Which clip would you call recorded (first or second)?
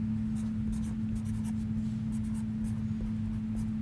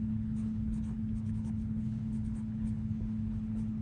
first